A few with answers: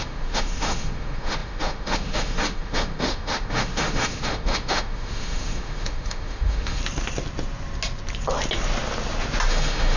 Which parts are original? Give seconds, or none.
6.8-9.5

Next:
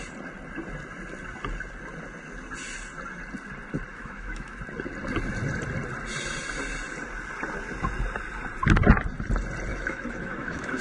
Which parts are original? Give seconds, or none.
0.0-3.9; 4.6-9.7